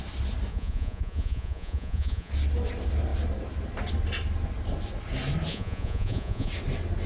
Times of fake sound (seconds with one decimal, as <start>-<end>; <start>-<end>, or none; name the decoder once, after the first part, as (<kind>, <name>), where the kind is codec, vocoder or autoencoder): 0.5-2.3 (vocoder, Vocos); 5.5-6.5